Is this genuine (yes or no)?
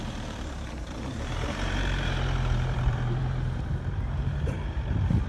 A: no